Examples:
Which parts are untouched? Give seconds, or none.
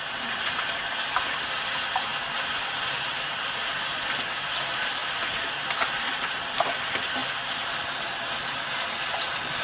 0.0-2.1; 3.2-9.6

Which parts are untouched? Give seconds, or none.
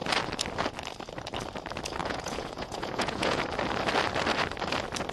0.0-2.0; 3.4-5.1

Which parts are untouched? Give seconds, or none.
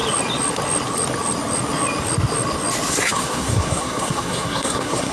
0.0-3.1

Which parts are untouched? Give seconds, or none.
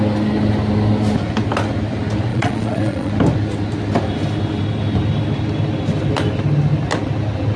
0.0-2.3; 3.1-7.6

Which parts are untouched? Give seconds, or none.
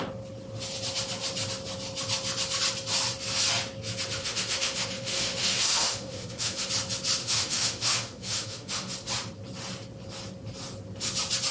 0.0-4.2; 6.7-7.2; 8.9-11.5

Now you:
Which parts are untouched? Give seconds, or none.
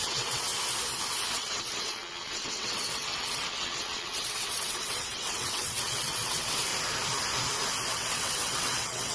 0.5-1.3; 6.7-7.9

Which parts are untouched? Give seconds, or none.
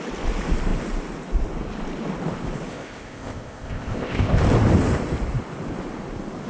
0.0-2.7; 4.4-6.5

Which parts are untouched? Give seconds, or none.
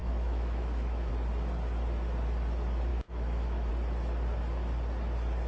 1.1-2.9; 3.7-5.5